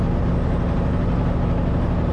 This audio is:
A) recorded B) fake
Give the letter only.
A